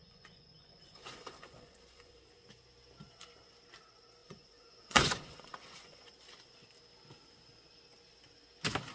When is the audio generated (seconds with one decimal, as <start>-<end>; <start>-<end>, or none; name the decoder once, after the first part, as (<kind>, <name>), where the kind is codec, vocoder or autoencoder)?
0.0-2.2 (vocoder, Vocos); 4.2-6.1